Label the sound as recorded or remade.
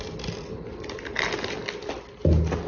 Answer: recorded